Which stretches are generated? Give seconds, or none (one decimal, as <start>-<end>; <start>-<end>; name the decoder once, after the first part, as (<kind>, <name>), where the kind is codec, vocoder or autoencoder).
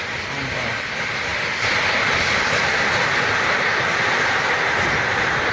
none